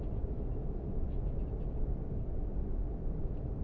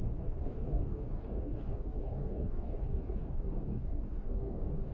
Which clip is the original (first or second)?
first